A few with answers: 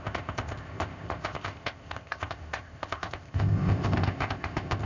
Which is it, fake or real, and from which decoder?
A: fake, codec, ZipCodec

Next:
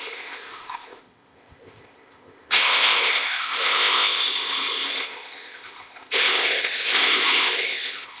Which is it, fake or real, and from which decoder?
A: fake, codec, ZipCodec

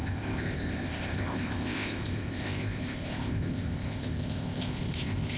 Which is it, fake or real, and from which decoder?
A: fake, codec, ZipCodec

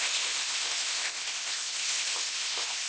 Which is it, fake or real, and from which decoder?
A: fake, codec, ZipCodec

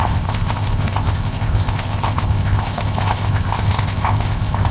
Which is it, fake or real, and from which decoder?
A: fake, codec, ZipCodec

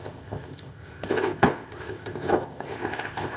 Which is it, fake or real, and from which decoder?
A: fake, codec, ZipCodec